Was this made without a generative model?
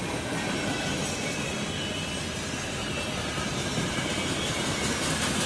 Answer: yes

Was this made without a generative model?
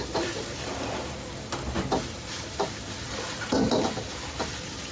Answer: yes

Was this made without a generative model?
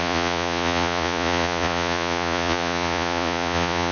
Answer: no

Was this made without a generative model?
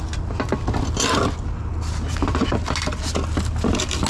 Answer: yes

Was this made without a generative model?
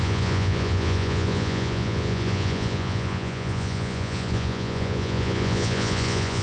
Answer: no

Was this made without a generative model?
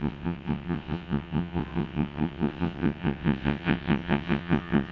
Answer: no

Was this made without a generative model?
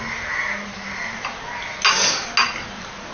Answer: yes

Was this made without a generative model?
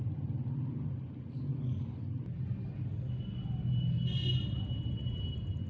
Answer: yes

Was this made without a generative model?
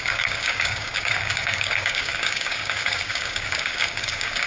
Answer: no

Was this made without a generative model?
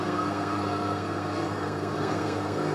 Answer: no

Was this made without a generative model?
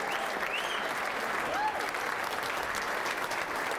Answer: yes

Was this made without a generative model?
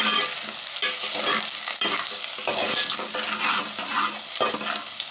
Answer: yes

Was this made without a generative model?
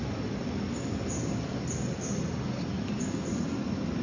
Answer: yes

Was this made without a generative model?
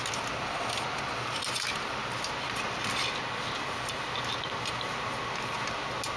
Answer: yes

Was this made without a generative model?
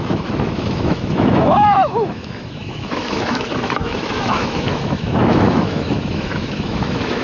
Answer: no